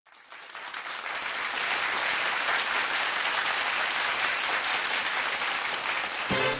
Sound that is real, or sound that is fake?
real